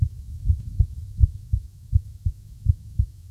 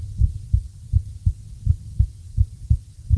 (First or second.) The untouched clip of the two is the second